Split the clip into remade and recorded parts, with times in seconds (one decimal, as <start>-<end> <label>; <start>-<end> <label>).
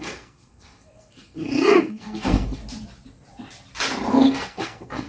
0.0-2.6 remade; 2.6-4.1 recorded; 4.1-5.1 remade